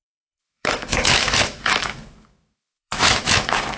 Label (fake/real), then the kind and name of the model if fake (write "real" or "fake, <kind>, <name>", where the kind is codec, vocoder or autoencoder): fake, autoencoder, DAC-VAE